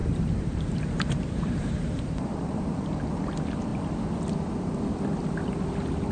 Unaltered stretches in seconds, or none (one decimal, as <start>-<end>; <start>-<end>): 2.6-6.1